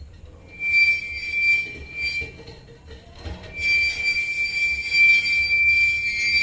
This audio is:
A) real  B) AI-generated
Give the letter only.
A